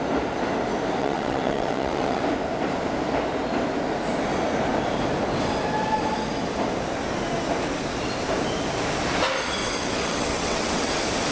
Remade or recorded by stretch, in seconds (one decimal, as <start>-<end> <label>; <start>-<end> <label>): 0.0-1.0 recorded; 1.0-2.2 remade; 2.2-9.6 recorded; 9.6-10.9 remade; 10.9-11.3 recorded